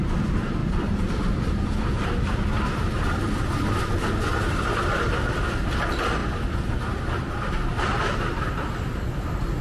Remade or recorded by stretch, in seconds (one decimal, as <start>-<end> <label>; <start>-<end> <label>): 0.0-0.6 recorded; 0.6-3.4 remade; 3.4-9.6 recorded